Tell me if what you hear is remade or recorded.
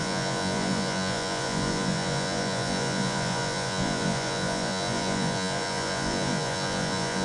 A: remade